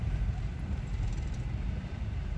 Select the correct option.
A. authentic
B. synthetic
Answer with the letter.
B